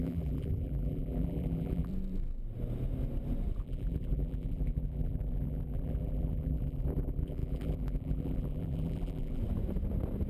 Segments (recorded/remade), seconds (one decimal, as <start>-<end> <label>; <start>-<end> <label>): 0.0-1.9 remade; 1.9-3.6 recorded; 3.6-9.4 remade; 9.4-10.3 recorded